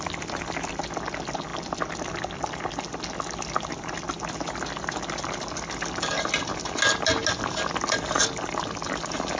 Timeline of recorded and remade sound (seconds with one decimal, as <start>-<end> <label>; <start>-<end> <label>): 0.0-9.4 recorded